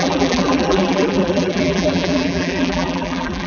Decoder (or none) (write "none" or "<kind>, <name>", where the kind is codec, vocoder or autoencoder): vocoder, BigVGAN v2